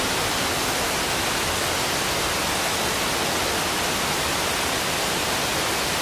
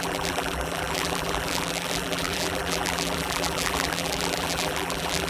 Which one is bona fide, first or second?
first